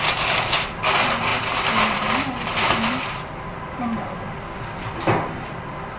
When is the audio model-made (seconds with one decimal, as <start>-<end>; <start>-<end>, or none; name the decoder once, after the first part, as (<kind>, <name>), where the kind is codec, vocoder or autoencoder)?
none